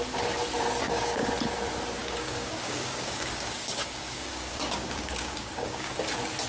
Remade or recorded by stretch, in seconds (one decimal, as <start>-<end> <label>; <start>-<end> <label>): 0.0-0.8 recorded; 0.8-1.3 remade; 1.3-2.0 recorded; 2.0-5.9 remade; 5.9-6.5 recorded